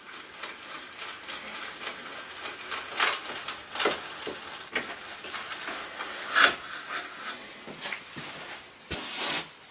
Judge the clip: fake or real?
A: real